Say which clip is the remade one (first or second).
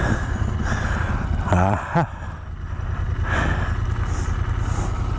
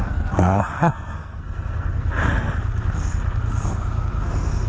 second